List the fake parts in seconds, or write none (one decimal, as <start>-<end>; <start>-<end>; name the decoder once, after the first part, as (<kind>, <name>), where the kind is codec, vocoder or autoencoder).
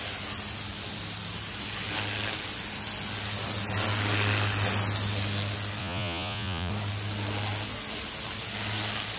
5.8-6.7 (vocoder, Vocos)